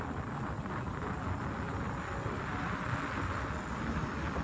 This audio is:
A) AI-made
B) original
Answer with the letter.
B